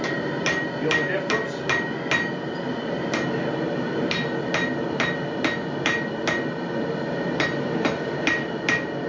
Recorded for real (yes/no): yes